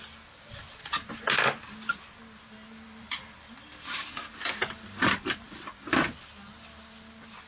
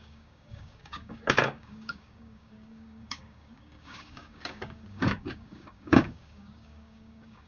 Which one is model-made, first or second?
second